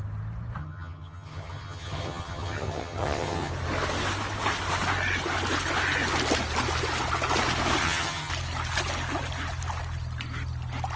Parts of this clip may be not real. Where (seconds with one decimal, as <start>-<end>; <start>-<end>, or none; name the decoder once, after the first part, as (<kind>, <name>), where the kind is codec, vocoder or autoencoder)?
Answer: 0.6-3.5 (vocoder, HiFi-GAN); 7.8-8.3